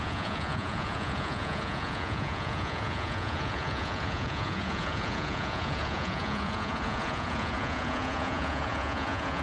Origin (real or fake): fake